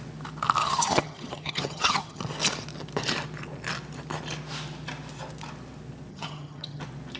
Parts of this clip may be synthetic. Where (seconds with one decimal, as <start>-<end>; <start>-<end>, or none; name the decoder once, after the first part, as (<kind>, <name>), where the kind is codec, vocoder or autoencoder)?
0.6-2.2 (vocoder, HiFi-GAN); 6.1-6.8